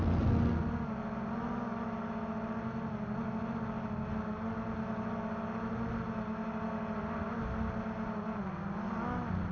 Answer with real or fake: real